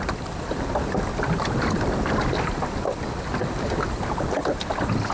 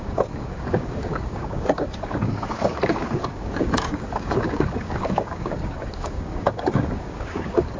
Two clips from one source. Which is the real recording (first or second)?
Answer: first